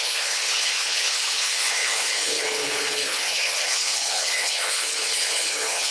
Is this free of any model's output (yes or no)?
no